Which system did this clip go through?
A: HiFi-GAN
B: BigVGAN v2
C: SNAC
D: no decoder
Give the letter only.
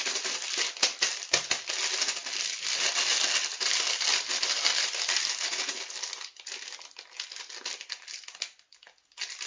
D